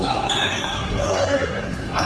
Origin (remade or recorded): remade